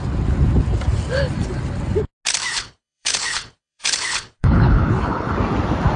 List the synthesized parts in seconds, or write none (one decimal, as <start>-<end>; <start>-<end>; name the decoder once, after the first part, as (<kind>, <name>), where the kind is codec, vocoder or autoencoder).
2.5-5.3 (codec, HILCodec)